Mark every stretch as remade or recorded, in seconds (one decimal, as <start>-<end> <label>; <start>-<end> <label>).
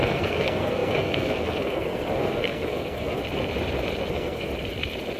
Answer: 0.0-3.2 remade; 3.2-4.1 recorded; 4.1-4.5 remade; 4.5-5.2 recorded